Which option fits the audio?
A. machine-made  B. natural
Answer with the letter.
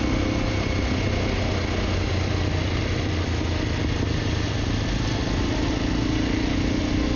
B